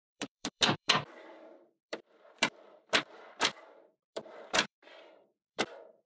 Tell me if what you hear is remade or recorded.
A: remade